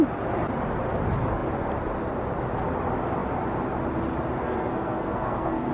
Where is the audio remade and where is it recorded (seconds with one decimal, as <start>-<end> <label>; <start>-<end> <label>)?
0.0-4.4 recorded; 4.4-5.7 remade